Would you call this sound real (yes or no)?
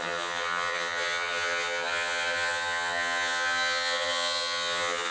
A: no